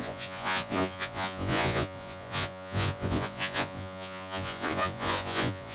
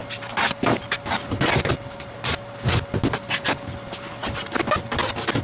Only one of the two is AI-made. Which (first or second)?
first